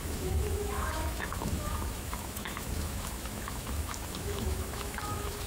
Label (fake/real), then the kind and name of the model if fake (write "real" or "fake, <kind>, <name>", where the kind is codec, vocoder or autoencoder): fake, autoencoder, DAC-VAE